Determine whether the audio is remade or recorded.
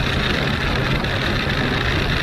recorded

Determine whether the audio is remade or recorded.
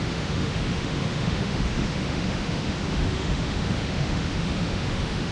remade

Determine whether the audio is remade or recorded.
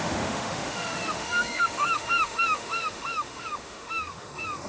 remade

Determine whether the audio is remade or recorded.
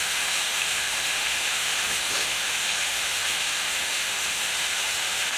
remade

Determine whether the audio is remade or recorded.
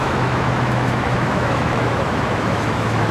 remade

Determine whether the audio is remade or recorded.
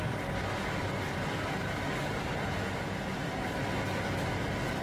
recorded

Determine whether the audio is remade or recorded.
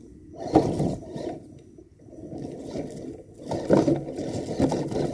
recorded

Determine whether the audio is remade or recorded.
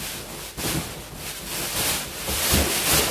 recorded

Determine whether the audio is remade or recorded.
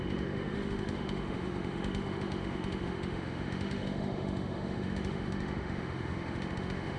remade